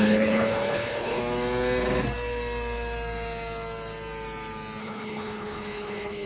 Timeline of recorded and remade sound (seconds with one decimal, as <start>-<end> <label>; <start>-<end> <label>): 0.0-1.2 remade; 1.2-4.8 recorded; 4.8-6.3 remade